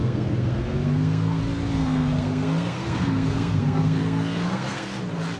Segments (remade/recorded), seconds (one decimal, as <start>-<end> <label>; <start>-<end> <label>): 0.0-1.4 remade; 1.4-1.8 recorded; 1.8-5.0 remade; 5.0-5.4 recorded